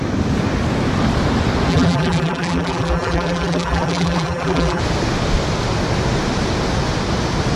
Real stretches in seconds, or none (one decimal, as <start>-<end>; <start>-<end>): 0.0-1.7; 4.8-7.6